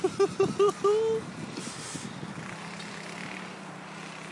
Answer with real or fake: real